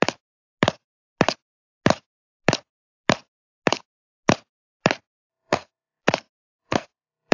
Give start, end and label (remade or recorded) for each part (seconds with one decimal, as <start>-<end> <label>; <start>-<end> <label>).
0.0-5.3 recorded; 5.3-6.0 remade; 6.0-6.6 recorded; 6.6-7.3 remade